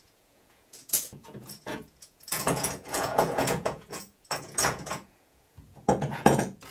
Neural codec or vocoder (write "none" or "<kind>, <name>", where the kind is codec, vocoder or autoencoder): vocoder, Vocos